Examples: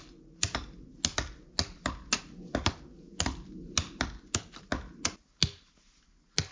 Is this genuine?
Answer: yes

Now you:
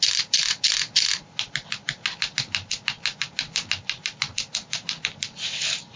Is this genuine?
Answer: yes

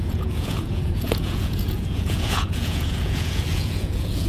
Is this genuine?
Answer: no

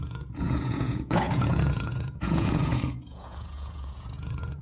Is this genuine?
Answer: no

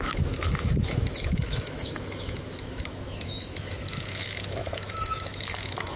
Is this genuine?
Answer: no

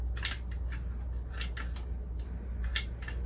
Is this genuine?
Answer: yes